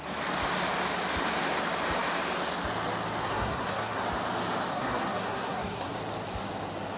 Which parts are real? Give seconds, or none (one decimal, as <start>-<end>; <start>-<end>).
0.0-3.2; 4.0-4.7; 5.9-7.0